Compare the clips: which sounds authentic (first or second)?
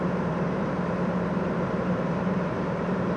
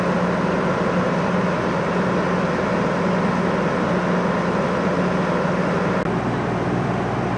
second